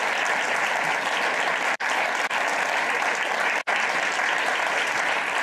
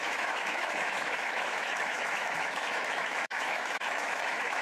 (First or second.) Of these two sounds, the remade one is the second